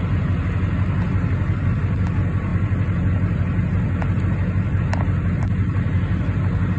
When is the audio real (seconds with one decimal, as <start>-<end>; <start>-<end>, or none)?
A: 0.0-6.8